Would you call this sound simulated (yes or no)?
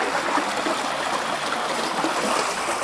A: no